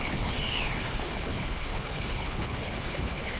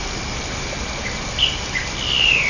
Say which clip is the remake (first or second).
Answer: first